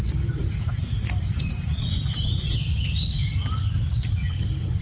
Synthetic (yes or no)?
no